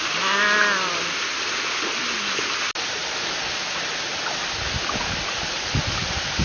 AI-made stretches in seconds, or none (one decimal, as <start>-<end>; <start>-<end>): none